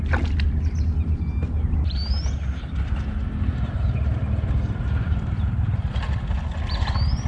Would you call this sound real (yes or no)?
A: yes